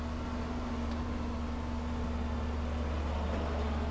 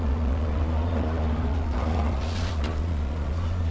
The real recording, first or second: first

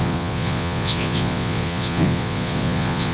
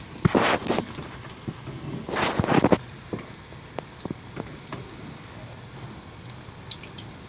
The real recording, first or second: second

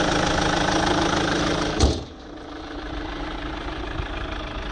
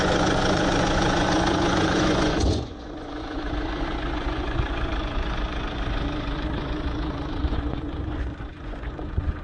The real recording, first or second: first